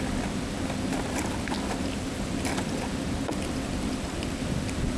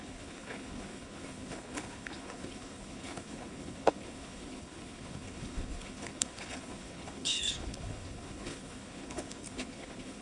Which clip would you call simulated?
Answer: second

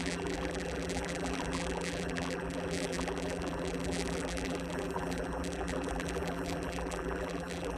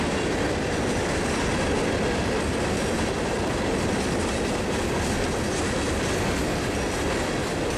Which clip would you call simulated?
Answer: first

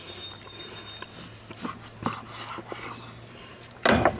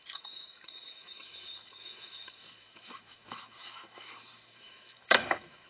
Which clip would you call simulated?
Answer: second